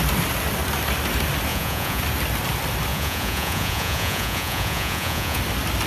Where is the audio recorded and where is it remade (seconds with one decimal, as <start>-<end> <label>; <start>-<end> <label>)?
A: 0.0-1.5 recorded; 1.5-2.0 remade; 2.0-2.9 recorded; 2.9-5.4 remade; 5.4-5.9 recorded